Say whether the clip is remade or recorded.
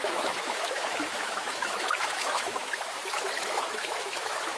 remade